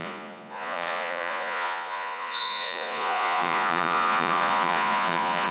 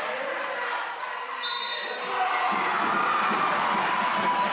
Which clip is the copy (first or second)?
first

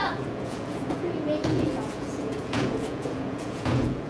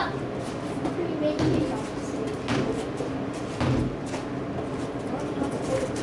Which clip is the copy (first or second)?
first